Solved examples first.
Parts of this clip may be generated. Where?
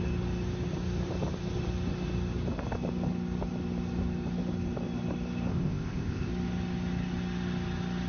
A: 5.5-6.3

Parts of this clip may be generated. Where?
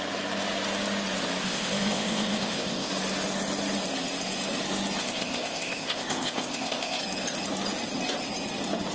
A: 1.4-2.9; 5.0-7.0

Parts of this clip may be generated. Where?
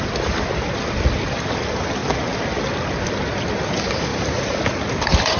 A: none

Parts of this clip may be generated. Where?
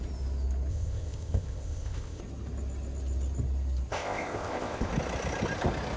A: 0.7-2.2; 3.9-4.9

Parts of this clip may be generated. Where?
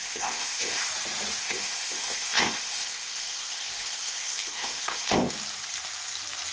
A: 0.0-0.9; 1.4-5.3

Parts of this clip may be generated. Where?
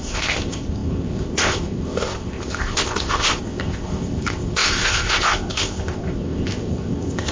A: 0.0-7.3